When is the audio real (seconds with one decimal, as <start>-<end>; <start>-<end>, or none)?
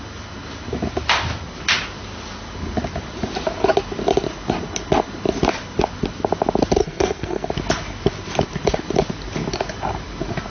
0.0-6.8; 7.5-10.5